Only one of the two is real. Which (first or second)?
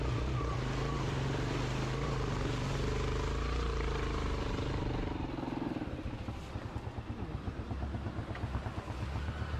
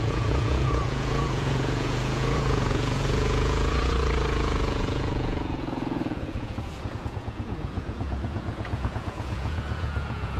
first